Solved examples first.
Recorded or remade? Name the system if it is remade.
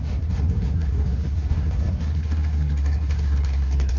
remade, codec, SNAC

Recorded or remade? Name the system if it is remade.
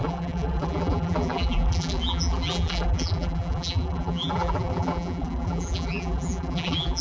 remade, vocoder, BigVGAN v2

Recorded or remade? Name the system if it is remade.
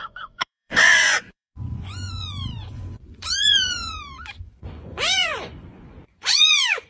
remade, vocoder, Vocos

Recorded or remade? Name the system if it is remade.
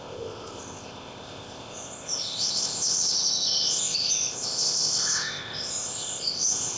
remade, codec, ZipCodec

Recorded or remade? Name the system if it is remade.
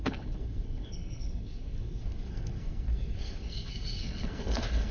remade, codec, SNAC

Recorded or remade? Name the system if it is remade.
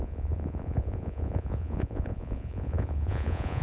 remade, vocoder, Vocos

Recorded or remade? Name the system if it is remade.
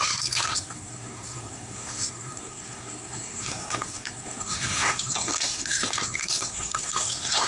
remade, codec, SNAC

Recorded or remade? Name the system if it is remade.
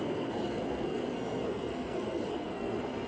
remade, codec, SNAC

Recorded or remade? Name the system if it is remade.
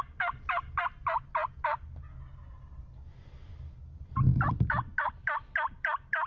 recorded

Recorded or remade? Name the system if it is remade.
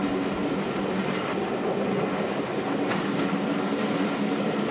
recorded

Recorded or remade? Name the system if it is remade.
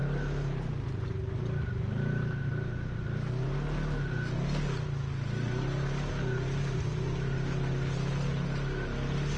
recorded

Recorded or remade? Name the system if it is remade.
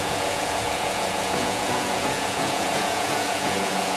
remade, vocoder, Vocos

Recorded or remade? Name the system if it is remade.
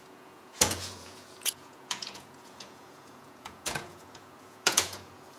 remade, vocoder, Vocos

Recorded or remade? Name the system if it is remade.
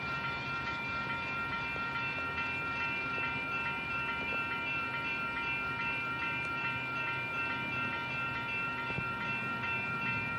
remade, vocoder, BigVGAN v2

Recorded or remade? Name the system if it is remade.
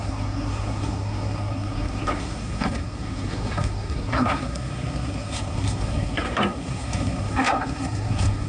remade, codec, SNAC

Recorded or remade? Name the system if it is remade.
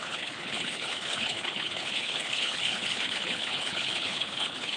remade, codec, HILCodec